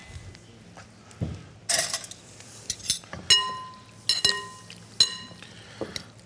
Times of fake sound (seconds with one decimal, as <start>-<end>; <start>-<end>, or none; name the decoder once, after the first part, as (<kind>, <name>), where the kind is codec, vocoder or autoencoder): none